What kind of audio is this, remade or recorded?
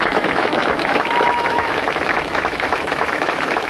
remade